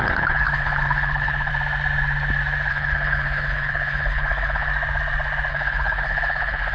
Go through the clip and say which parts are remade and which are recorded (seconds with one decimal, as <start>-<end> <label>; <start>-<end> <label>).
0.0-1.5 remade; 1.5-2.7 recorded; 2.7-4.7 remade; 4.7-5.5 recorded; 5.5-6.7 remade